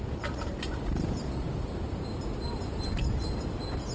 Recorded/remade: recorded